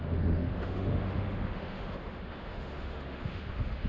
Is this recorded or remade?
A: remade